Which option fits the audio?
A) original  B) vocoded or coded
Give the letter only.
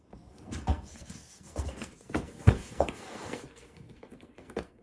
B